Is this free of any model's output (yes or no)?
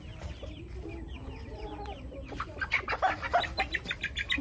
yes